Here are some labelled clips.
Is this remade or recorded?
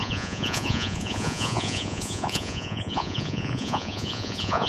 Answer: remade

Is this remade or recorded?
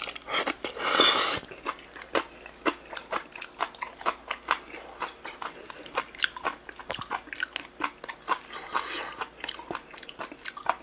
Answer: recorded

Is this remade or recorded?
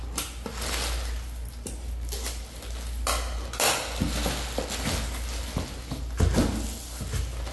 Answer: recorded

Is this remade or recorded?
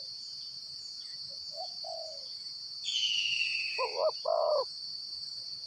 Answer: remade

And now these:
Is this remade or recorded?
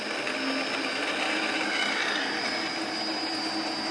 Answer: recorded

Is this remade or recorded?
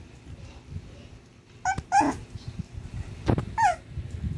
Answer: recorded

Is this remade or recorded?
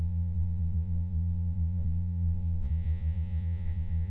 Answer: remade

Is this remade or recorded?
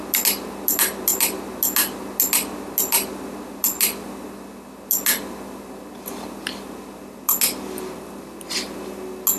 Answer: recorded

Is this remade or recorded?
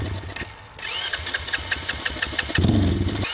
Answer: recorded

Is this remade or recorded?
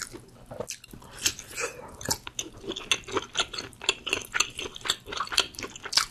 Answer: recorded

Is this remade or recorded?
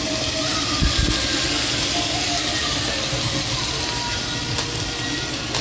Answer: recorded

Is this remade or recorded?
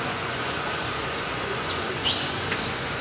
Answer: remade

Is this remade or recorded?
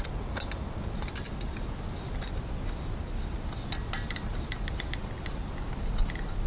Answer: recorded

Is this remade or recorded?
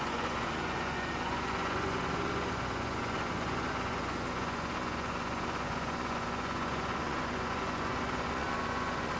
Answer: remade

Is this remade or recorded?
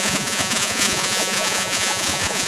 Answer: remade